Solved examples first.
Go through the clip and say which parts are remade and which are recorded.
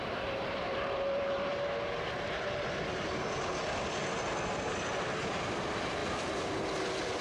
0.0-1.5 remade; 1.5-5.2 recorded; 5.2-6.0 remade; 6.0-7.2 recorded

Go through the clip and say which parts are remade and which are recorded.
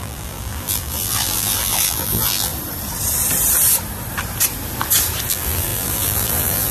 0.0-2.5 remade; 2.5-5.3 recorded; 5.3-6.7 remade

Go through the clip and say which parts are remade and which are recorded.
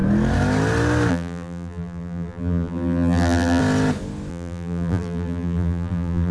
0.0-1.1 recorded; 1.1-3.6 remade; 3.6-4.3 recorded; 4.3-6.3 remade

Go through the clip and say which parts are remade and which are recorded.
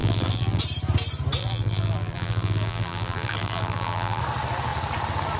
0.0-0.6 remade; 0.6-1.4 recorded; 1.4-4.2 remade; 4.2-5.4 recorded